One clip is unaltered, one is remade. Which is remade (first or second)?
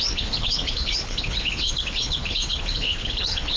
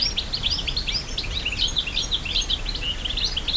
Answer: first